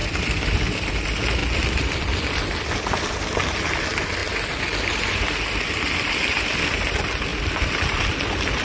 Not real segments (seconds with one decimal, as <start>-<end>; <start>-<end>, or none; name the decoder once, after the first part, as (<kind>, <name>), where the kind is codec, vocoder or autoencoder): 1.4-3.5 (vocoder, BigVGAN v2); 7.3-8.1

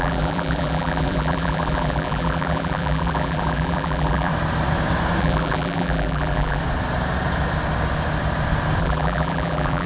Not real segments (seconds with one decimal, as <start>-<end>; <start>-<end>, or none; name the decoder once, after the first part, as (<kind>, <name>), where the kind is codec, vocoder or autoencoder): 0.0-4.3 (vocoder, BigVGAN v2); 5.2-6.6; 8.8-9.9

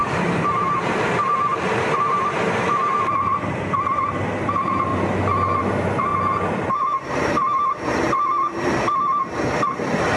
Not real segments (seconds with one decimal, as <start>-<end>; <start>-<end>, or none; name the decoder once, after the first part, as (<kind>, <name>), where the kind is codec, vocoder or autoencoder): 0.0-4.9 (vocoder, BigVGAN v2); 5.6-6.1; 6.7-10.2

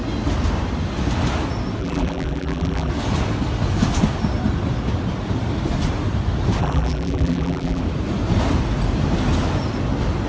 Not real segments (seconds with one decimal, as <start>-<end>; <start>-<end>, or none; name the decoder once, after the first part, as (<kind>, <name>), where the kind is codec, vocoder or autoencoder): 1.8-2.9 (vocoder, BigVGAN v2); 6.6-7.8

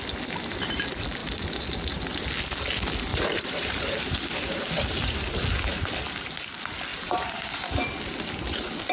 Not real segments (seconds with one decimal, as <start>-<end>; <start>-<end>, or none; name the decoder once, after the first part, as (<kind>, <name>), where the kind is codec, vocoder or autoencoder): 3.1-5.3 (vocoder, BigVGAN v2); 6.9-8.0

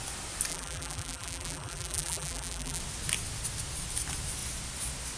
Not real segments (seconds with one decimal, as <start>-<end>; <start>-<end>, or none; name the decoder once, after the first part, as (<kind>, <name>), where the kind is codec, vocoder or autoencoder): 0.5-2.8 (vocoder, BigVGAN v2)